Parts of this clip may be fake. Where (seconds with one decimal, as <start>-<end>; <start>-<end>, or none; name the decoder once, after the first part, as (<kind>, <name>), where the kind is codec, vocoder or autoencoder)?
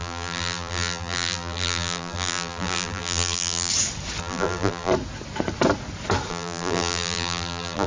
0.0-3.7 (vocoder, BigVGAN v2); 4.2-4.9; 6.3-7.9